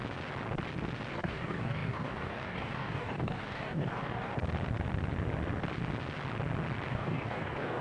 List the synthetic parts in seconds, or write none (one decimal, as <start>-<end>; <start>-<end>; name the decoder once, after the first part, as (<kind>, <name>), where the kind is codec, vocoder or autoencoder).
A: 1.1-4.3 (codec, DAC); 6.9-7.8